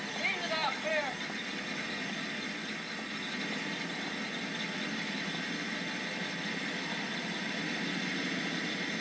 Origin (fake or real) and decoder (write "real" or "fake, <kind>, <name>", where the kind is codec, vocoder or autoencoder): real